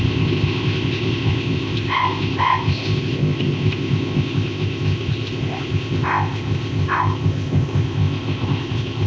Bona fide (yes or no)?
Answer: no